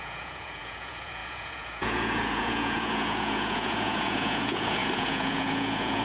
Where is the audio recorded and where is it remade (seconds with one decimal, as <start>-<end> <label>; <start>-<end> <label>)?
0.0-6.0 remade